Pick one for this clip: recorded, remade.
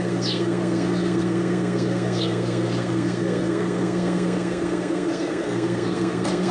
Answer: remade